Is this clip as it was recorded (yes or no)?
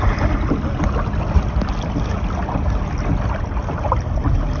yes